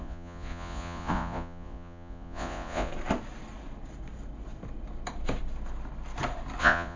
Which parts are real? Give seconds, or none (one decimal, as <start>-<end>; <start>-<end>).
2.9-6.6